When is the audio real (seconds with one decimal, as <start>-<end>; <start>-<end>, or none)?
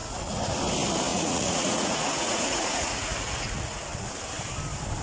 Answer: 0.6-1.1; 3.8-5.0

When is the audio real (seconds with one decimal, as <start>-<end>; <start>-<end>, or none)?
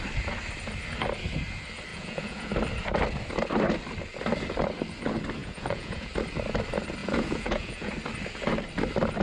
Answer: 0.0-1.9; 2.5-5.4; 6.1-7.0; 7.9-9.2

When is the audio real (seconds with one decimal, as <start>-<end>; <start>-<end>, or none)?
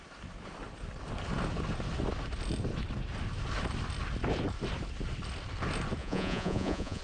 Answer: 0.0-6.0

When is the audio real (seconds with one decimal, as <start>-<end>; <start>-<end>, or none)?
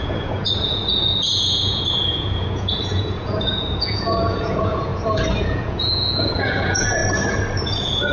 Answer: 4.9-5.4; 7.0-7.6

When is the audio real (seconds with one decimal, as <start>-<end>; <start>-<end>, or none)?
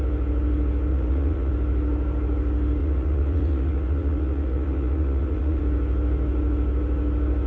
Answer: 0.0-0.9; 1.5-2.8; 5.6-7.5